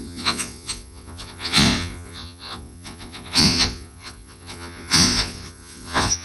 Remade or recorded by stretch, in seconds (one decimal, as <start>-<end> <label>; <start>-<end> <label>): 0.0-6.2 remade

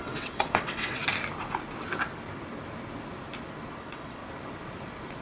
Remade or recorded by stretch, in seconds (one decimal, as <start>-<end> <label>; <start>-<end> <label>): 0.0-1.0 remade; 1.0-3.8 recorded; 3.8-4.2 remade; 4.2-5.2 recorded

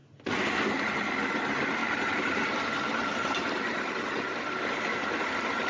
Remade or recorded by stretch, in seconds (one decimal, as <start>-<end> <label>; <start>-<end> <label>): 0.0-1.8 recorded; 1.8-5.2 remade; 5.2-5.7 recorded

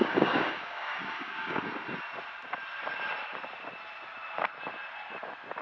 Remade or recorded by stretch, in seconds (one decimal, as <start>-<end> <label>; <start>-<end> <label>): 0.0-1.6 remade; 1.6-5.6 recorded